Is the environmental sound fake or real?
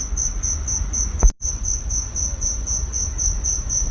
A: fake